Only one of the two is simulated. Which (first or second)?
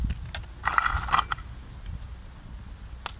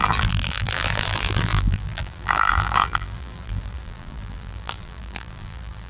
second